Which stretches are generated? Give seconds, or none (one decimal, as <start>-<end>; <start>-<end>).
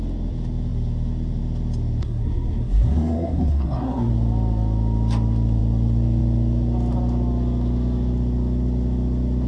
2.0-4.1